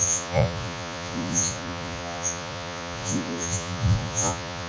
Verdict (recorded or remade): remade